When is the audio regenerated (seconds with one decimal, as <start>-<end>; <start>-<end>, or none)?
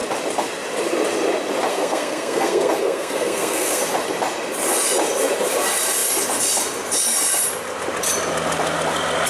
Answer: 1.7-3.8